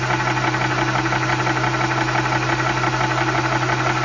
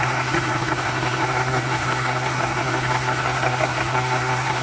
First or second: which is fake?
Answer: second